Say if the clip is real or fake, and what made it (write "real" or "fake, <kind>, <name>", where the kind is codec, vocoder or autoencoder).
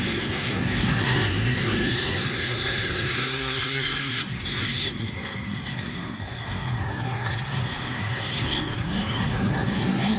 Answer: fake, codec, SNAC